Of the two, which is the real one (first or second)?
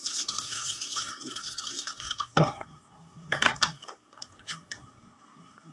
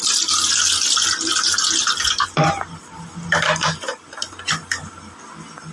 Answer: second